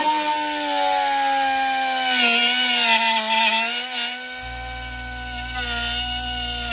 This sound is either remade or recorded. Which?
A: recorded